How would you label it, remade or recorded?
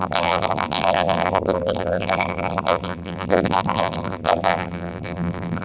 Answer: remade